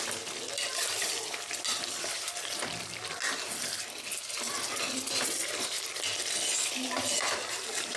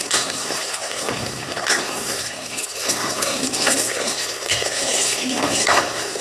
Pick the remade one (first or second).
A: second